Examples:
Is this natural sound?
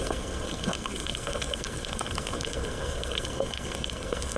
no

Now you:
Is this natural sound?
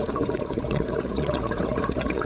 no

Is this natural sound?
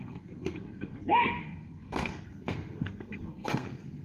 no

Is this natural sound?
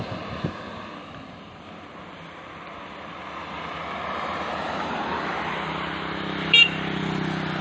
yes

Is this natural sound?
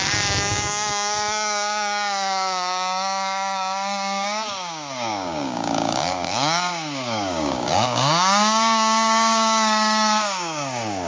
no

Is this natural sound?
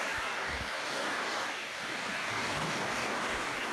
no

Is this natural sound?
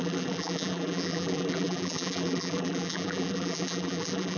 no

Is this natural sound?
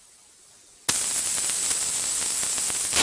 yes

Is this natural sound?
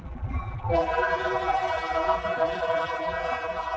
no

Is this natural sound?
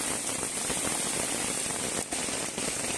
yes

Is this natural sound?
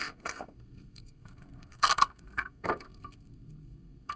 no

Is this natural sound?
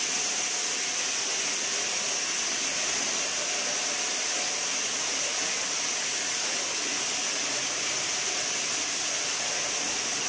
yes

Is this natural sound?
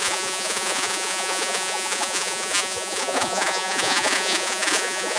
no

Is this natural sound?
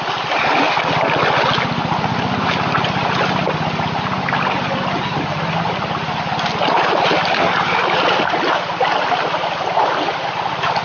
yes